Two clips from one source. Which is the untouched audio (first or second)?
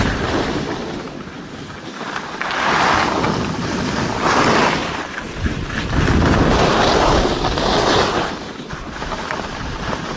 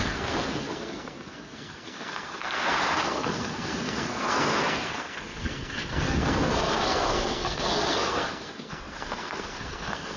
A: first